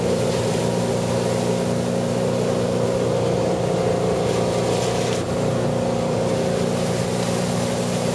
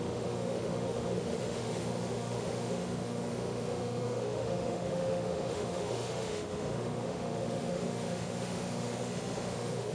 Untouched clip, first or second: first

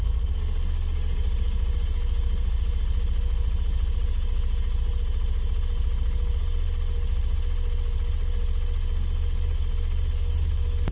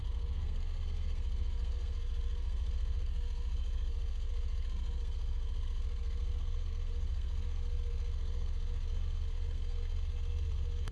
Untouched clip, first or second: first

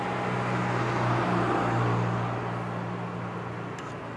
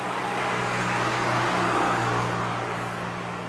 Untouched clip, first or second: first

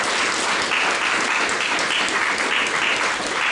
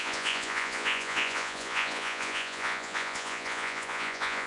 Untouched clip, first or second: first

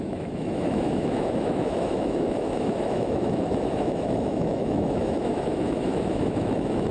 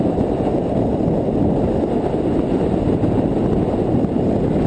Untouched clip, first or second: second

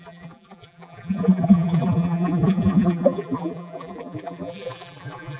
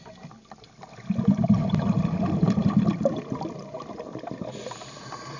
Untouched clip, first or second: second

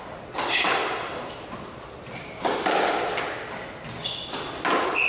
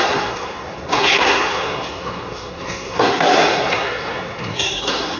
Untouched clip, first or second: first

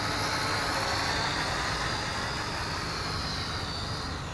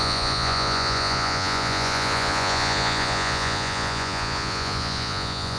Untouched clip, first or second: first